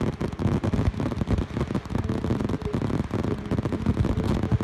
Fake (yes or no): no